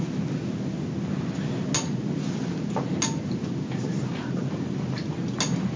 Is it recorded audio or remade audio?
recorded